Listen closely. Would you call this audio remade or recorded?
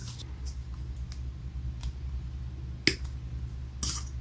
recorded